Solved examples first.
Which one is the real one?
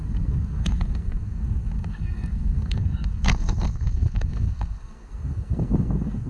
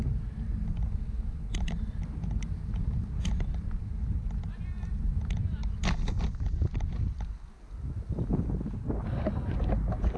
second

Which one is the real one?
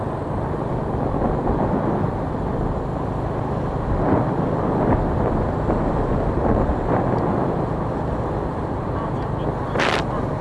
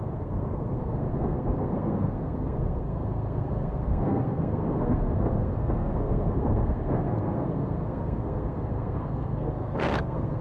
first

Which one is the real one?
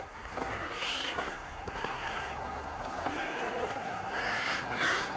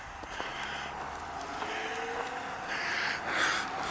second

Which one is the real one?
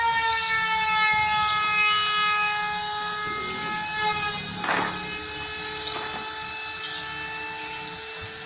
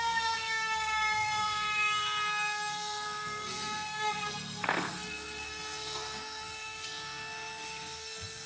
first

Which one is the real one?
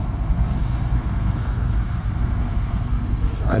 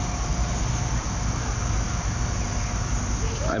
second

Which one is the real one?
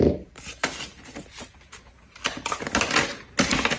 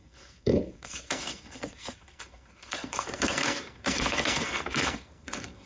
first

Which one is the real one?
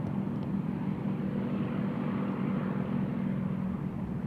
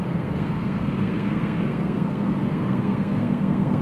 first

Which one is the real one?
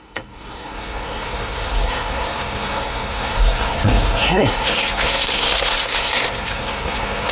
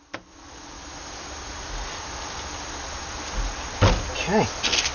second